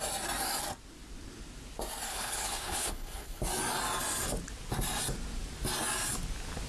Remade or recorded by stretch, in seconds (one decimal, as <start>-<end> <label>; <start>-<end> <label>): 0.0-2.1 recorded; 2.1-3.4 remade; 3.4-6.7 recorded